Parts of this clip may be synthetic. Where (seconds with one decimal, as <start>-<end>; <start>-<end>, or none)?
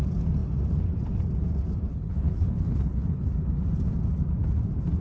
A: 1.9-3.3